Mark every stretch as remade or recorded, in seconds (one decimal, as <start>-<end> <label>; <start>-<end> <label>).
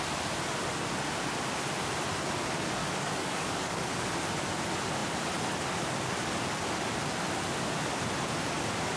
0.0-2.8 recorded; 2.8-4.1 remade; 4.1-9.0 recorded